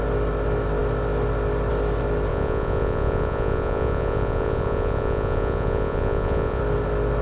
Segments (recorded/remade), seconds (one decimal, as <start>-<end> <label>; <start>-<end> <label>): 0.0-2.3 recorded; 2.3-6.6 remade; 6.6-7.2 recorded